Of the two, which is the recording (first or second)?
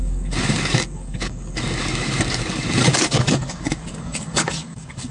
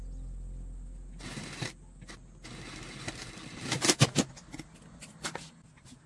second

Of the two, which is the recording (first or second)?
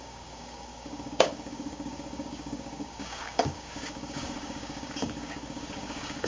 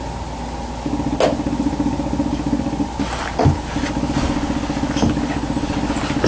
second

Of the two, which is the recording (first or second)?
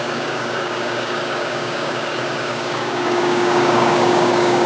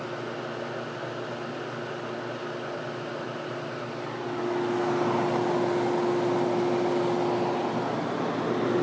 second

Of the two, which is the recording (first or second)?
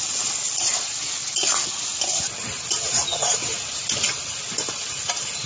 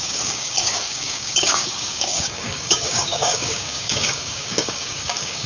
first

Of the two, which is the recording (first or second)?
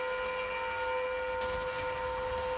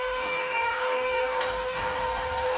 first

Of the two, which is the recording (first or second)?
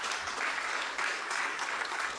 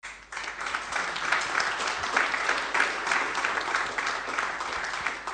second